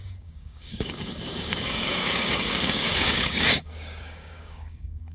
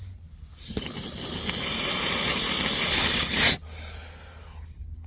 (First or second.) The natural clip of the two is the second